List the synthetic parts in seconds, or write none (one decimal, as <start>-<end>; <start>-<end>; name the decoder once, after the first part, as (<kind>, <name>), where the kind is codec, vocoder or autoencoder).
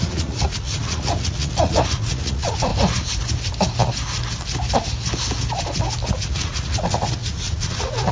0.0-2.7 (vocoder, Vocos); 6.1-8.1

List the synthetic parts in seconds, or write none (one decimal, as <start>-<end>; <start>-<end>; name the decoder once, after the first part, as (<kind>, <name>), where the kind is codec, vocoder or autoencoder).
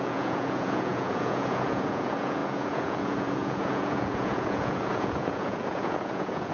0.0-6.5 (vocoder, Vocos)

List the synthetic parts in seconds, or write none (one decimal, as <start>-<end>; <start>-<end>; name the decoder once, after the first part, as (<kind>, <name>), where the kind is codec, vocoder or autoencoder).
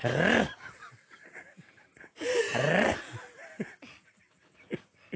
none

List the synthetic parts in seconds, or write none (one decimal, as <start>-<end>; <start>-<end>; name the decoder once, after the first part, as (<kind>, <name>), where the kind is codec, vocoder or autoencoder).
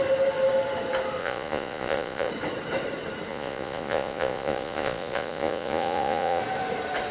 1.2-2.3 (vocoder, Vocos); 3.3-6.4